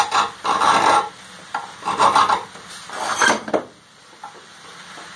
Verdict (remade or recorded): recorded